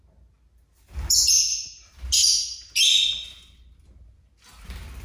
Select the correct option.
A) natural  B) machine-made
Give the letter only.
A